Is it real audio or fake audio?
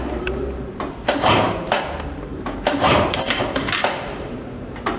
fake